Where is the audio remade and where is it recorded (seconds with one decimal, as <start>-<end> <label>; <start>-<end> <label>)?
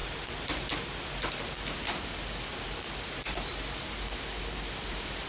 0.0-3.1 recorded; 3.1-5.3 remade